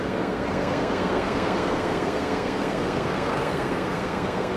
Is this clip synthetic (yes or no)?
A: yes